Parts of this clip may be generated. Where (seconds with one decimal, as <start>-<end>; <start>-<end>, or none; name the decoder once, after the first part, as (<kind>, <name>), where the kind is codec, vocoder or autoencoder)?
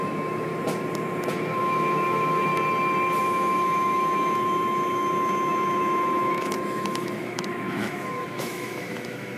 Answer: 0.0-0.5 (autoencoder, DAC-VAE); 1.3-2.5; 3.2-9.4